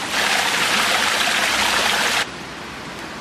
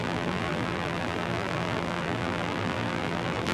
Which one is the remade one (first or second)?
second